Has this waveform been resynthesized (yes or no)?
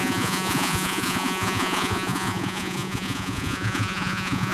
yes